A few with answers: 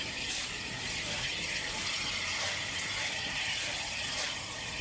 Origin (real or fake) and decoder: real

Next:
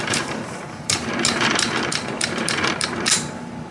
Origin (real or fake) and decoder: fake, vocoder, BigVGAN v2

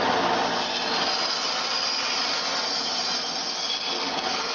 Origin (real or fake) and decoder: real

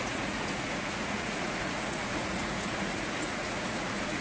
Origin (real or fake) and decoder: fake, vocoder, Vocos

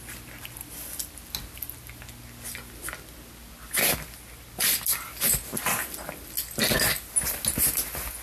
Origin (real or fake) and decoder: real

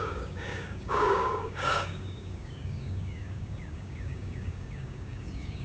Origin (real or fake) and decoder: fake, codec, DAC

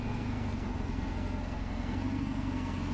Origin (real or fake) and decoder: fake, codec, SNAC